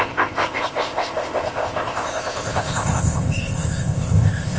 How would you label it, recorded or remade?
remade